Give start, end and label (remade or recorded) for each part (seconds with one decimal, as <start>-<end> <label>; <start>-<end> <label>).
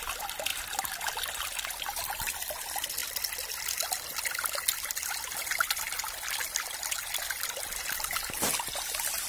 0.0-9.3 recorded